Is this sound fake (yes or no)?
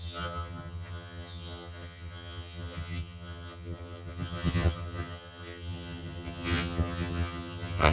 yes